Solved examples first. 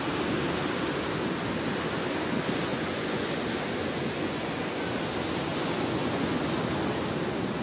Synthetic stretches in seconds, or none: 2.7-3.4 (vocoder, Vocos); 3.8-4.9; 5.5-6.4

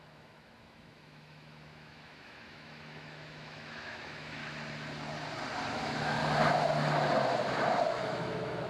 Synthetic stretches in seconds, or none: 0.0-4.4 (autoencoder, DAC-VAE); 5.7-6.2; 7.9-8.7

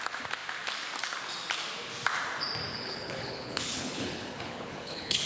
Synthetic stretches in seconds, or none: 2.7-5.3 (codec, HILCodec)

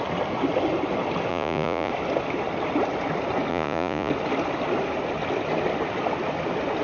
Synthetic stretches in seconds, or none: 1.3-1.9 (vocoder, Vocos); 3.5-4.1

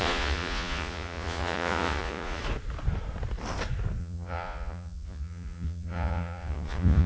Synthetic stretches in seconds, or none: 0.0-2.4 (vocoder, Vocos); 4.0-7.1

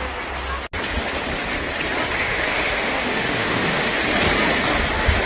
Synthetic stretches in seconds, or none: 2.2-4.0 (autoencoder, DAC-VAE)

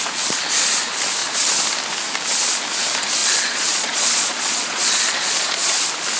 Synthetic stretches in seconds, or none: 3.2-5.8 (vocoder, Vocos)

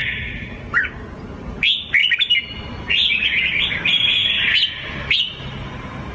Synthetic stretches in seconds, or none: none